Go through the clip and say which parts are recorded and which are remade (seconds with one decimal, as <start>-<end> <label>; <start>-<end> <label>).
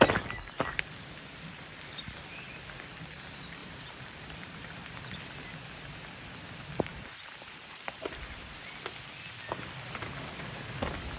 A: 0.0-3.6 recorded; 3.6-5.2 remade; 5.2-6.9 recorded; 6.9-8.1 remade; 8.1-11.2 recorded